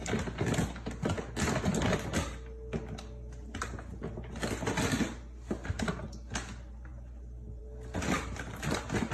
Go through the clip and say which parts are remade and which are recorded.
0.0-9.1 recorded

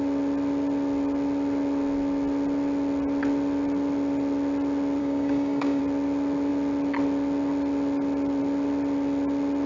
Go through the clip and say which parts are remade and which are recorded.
0.0-5.0 recorded; 5.0-5.8 remade; 5.8-9.7 recorded